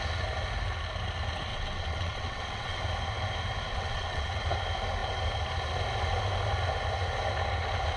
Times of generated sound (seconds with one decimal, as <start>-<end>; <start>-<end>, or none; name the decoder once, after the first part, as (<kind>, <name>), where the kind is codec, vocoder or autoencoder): 1.5-2.8 (vocoder, WaveNeXt); 3.7-4.4